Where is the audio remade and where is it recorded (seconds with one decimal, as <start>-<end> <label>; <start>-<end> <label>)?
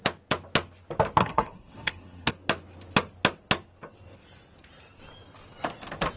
0.0-1.2 recorded; 1.2-2.3 remade; 2.3-6.2 recorded